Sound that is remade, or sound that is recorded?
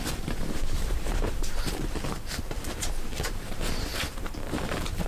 remade